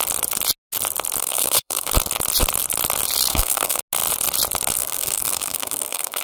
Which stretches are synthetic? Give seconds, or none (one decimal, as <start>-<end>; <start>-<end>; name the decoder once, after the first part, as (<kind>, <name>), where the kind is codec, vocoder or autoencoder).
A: 1.2-1.9 (codec, SNAC); 3.3-3.8; 4.8-6.2